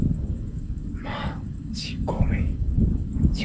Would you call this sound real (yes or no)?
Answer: no